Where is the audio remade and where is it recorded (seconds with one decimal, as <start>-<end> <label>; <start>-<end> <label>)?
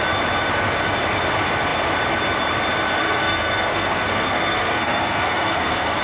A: 0.0-3.0 recorded; 3.0-6.0 remade